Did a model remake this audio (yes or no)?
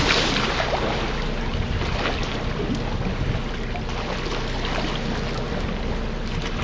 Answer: no